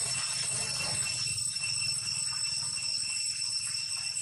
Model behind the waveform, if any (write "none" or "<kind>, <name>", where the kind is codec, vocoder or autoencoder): none